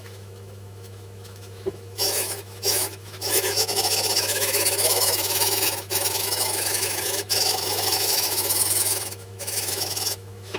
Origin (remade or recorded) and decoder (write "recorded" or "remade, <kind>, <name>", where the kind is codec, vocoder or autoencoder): remade, autoencoder, DAC-VAE